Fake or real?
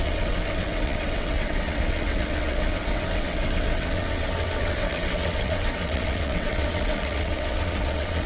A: fake